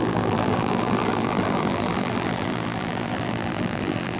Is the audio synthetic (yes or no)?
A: yes